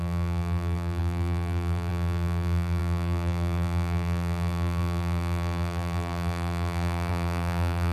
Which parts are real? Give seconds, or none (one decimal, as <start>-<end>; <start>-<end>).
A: none